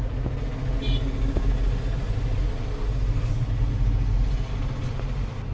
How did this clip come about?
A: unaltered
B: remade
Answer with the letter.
A